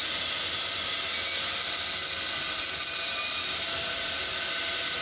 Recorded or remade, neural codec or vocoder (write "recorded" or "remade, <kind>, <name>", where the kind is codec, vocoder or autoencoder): recorded